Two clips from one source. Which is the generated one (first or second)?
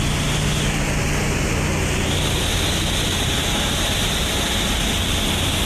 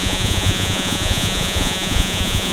second